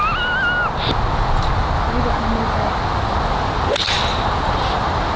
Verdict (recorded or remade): recorded